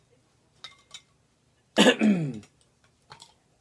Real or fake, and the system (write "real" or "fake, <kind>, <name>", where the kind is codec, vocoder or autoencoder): real